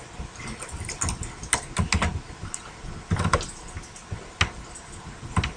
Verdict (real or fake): real